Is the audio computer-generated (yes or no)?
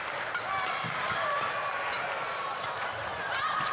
no